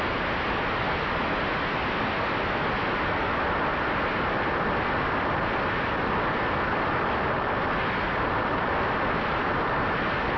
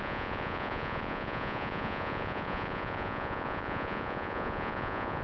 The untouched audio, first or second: first